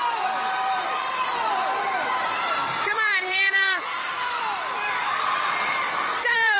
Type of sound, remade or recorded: remade